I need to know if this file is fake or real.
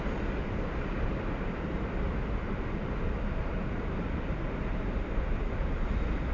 fake